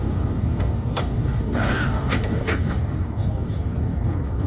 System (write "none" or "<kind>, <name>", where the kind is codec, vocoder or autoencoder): codec, DAC